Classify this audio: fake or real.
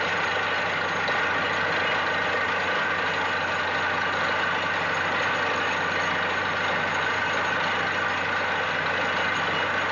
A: real